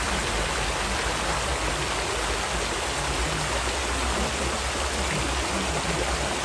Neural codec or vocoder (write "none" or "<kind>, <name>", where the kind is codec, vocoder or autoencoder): none